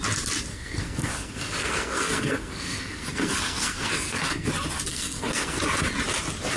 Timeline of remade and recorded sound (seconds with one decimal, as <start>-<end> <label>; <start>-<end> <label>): 0.0-0.5 recorded; 0.5-4.5 remade; 4.5-4.9 recorded; 4.9-5.6 remade; 5.6-6.6 recorded